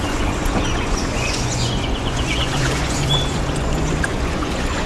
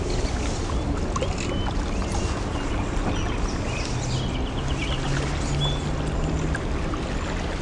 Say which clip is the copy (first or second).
first